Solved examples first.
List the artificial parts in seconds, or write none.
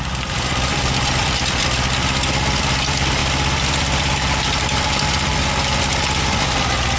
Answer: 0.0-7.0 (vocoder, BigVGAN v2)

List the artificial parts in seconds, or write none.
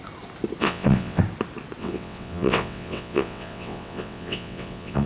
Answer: 0.6-1.2 (vocoder, WaveNeXt); 1.8-5.1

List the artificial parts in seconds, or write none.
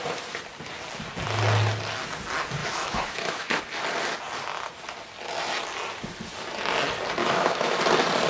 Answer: 2.6-3.6 (autoencoder, DAC-VAE); 7.2-7.8